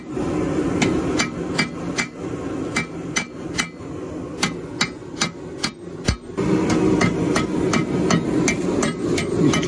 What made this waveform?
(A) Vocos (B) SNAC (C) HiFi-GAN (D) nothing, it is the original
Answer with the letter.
D